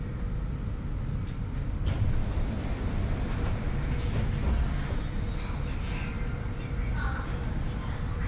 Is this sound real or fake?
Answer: real